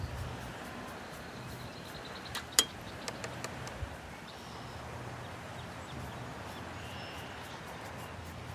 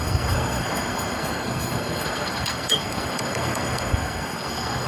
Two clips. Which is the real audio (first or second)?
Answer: first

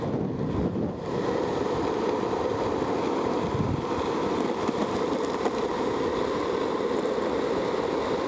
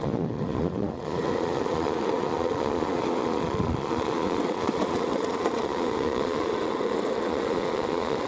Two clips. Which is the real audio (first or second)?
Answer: first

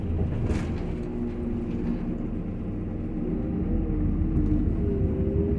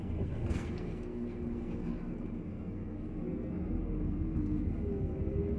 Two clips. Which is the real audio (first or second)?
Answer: first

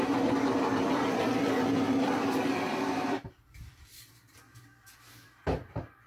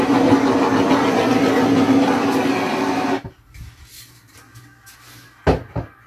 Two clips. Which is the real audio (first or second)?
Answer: second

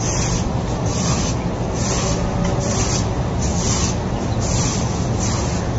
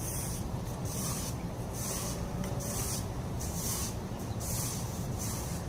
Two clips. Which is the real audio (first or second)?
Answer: first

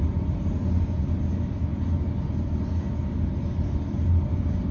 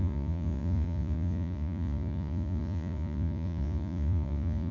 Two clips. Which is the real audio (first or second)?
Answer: first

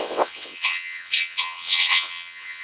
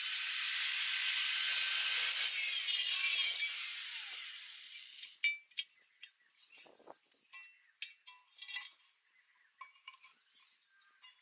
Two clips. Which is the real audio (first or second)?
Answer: second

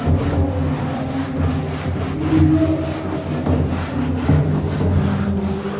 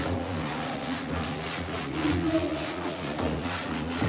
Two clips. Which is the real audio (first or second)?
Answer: first